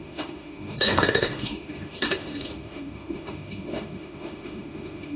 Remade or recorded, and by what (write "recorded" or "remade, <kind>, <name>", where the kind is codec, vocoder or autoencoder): remade, autoencoder, DAC-VAE